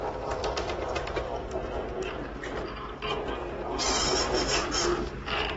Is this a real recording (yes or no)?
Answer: yes